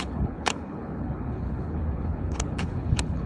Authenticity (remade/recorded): remade